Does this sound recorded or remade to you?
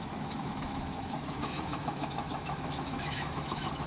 remade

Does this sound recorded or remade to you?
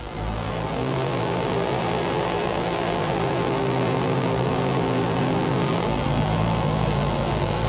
remade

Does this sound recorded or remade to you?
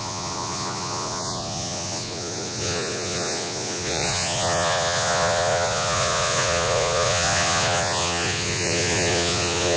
remade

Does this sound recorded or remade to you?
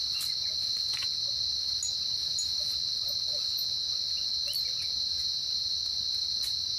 recorded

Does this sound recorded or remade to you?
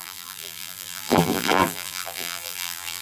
remade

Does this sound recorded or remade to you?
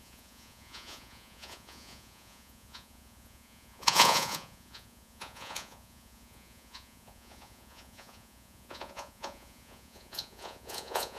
remade